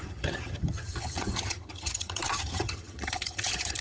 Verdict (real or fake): fake